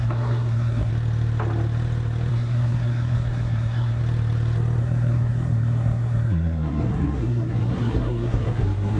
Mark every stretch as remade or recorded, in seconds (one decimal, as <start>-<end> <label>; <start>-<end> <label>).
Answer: 0.0-0.9 remade; 0.9-2.3 recorded; 2.3-4.0 remade; 4.0-4.8 recorded; 4.8-9.0 remade